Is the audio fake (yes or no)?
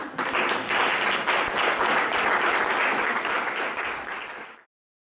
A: no